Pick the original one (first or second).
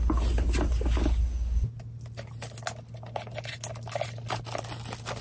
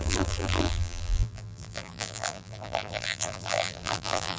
first